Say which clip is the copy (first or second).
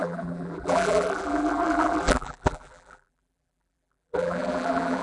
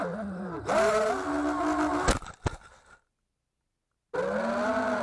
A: first